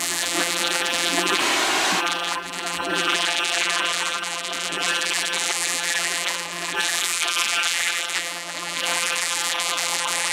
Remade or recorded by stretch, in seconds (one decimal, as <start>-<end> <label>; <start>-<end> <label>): 0.0-1.4 remade; 1.4-2.0 recorded; 2.0-10.3 remade